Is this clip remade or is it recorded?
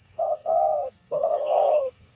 remade